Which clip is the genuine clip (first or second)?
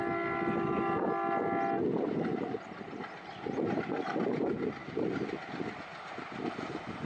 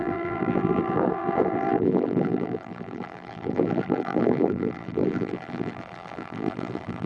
first